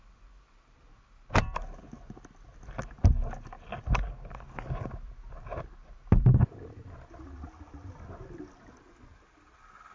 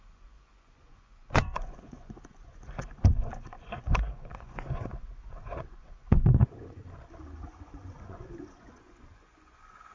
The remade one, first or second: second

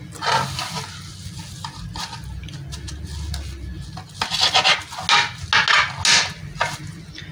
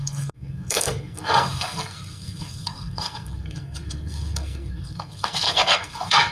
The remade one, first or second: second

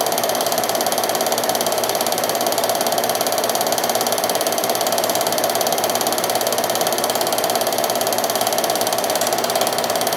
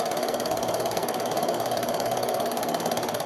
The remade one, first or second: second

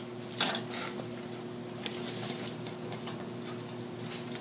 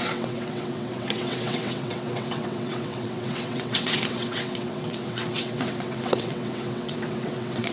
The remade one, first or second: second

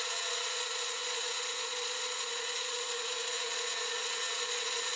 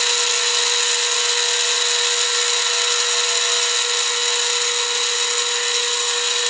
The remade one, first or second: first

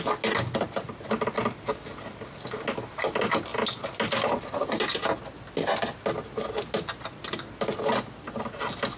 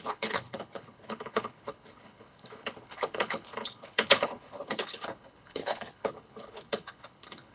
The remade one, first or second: second